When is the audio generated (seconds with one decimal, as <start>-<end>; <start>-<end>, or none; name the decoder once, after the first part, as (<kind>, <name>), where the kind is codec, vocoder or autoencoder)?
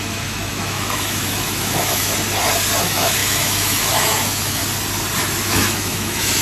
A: 0.0-2.1 (autoencoder, DAC-VAE); 2.8-4.6; 5.2-6.4